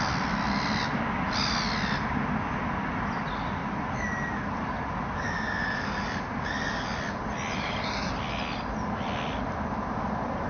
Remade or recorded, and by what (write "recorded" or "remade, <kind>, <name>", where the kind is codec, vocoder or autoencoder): recorded